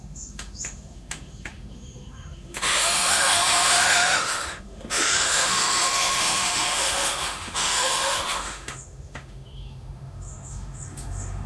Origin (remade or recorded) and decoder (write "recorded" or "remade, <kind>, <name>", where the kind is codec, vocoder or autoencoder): remade, autoencoder, DAC-VAE